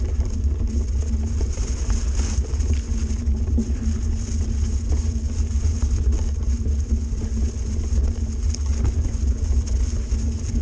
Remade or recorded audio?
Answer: recorded